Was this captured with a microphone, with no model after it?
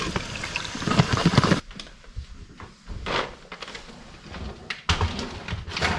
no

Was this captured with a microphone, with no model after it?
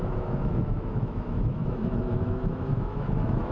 no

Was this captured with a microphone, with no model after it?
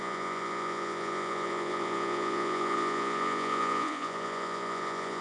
no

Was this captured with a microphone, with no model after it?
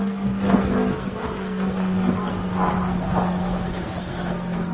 no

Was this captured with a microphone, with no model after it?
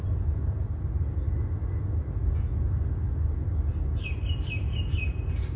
yes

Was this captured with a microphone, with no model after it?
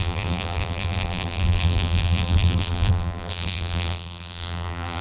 no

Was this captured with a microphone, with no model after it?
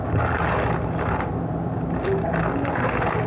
yes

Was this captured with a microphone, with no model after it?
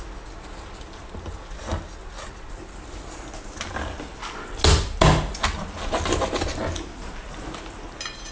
yes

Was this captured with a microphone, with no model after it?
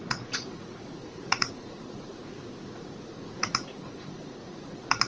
no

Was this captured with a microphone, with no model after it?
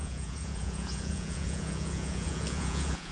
no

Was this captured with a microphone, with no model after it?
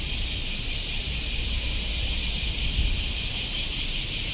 yes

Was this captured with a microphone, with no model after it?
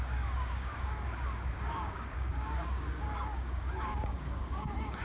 no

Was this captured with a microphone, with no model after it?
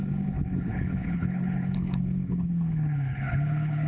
no